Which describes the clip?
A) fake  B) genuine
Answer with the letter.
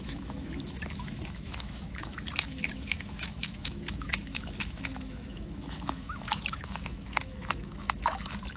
A